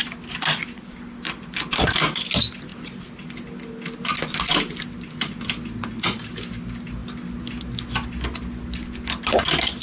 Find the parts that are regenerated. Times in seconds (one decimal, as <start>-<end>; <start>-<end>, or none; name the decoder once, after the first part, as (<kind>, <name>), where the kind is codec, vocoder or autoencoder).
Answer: none